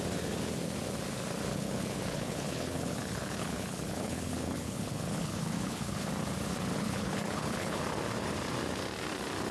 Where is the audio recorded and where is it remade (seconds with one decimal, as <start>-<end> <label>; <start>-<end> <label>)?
0.0-1.5 recorded; 1.5-6.1 remade; 6.1-6.7 recorded; 6.7-7.8 remade; 7.8-9.5 recorded